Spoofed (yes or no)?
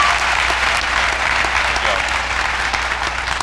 no